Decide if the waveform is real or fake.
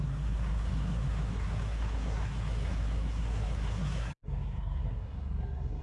fake